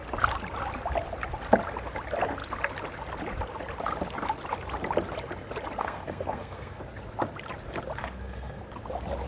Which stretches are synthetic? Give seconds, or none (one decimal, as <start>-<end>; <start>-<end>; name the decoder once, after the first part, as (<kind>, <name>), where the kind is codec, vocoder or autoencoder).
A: 5.8-6.8 (codec, SNAC); 8.0-8.6